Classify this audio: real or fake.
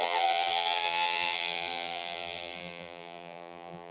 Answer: fake